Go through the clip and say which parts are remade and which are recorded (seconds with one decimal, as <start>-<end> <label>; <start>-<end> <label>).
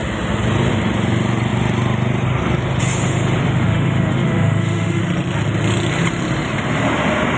0.0-3.4 recorded; 3.4-5.0 remade; 5.0-7.4 recorded